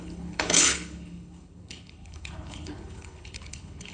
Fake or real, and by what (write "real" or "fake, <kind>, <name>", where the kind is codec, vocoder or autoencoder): fake, codec, HILCodec